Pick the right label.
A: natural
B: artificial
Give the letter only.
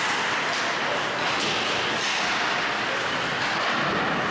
A